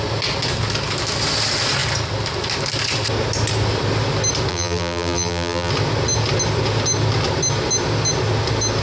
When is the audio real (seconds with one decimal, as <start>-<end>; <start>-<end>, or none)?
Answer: 0.0-4.5; 5.7-8.8